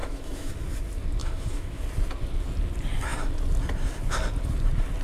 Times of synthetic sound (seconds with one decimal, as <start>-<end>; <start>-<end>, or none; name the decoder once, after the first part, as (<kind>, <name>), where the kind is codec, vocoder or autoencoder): 0.0-0.5 (autoencoder, DAC-VAE); 1.2-1.8

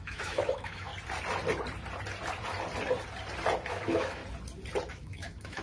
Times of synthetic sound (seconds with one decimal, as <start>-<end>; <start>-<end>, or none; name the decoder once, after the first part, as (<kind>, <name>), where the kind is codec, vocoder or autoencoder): 0.0-0.9 (autoencoder, DAC-VAE); 3.7-4.2; 4.9-5.6

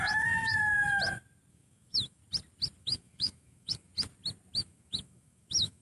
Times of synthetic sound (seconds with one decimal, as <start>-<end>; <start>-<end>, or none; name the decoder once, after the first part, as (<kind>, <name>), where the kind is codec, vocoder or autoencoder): 0.0-0.7 (autoencoder, DAC-VAE); 1.5-2.2; 2.8-3.9; 4.6-5.8

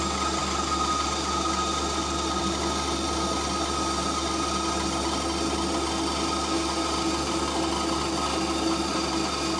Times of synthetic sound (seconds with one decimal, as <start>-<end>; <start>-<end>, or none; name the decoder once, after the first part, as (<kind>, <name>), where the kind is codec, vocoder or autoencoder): none

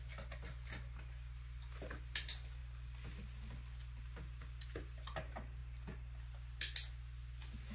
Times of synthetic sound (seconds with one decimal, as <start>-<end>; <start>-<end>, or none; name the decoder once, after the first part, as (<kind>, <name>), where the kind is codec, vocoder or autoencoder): none

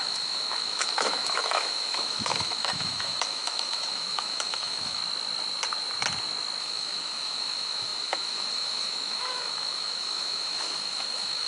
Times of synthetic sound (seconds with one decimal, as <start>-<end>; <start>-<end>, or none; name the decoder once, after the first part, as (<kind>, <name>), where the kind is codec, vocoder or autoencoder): 0.0-5.0 (autoencoder, DAC-VAE); 6.6-11.5

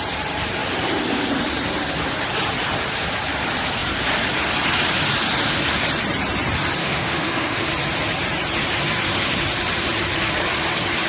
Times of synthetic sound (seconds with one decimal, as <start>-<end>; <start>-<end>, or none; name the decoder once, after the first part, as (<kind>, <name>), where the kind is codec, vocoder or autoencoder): 6.8-7.7 (autoencoder, DAC-VAE)

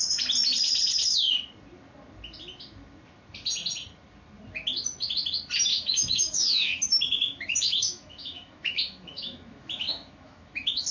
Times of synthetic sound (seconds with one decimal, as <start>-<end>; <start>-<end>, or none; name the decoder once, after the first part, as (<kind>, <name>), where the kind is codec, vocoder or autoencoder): 5.7-10.9 (autoencoder, DAC-VAE)